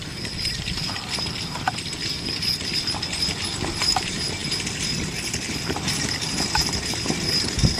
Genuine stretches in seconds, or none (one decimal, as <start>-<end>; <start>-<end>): 0.0-7.8

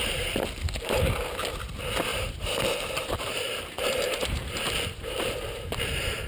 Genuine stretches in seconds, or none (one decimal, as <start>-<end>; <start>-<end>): 0.0-2.1

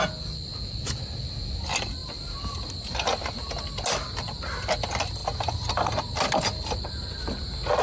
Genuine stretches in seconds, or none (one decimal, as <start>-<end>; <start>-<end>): 0.0-7.8

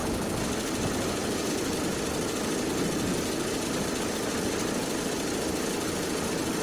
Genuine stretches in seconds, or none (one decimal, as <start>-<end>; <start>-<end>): 0.0-6.6